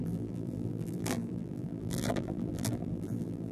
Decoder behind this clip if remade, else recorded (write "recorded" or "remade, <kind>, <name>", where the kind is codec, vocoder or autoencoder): remade, vocoder, BigVGAN v2